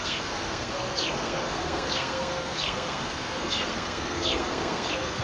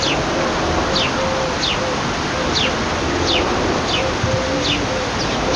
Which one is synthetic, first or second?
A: first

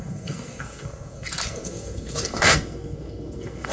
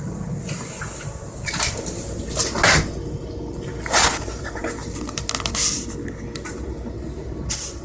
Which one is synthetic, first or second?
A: first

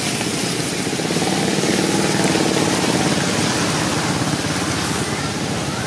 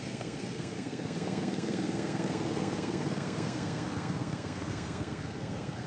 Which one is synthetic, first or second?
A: second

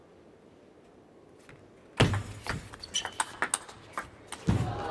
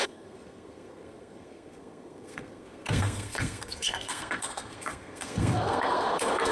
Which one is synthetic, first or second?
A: second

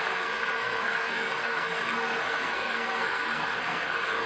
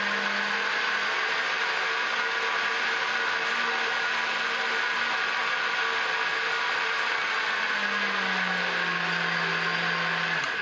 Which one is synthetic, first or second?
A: first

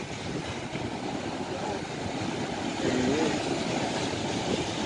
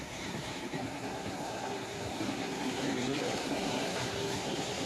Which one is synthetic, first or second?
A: second